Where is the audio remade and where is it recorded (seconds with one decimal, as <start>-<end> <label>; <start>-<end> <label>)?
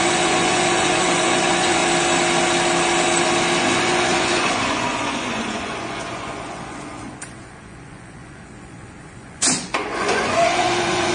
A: 0.0-1.8 remade; 1.8-3.6 recorded; 3.6-11.1 remade